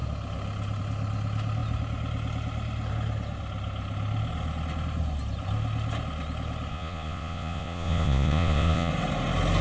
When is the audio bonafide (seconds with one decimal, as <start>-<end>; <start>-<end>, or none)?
0.0-6.7; 8.9-9.6